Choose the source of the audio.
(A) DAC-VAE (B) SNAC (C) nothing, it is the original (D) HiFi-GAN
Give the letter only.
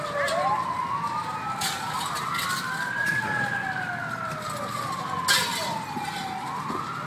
C